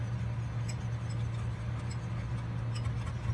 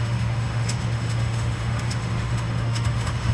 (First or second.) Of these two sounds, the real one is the first